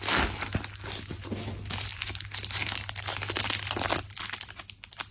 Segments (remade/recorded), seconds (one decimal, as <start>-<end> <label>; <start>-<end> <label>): 0.0-5.1 recorded